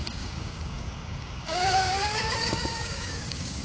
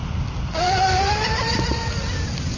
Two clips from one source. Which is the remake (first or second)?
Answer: first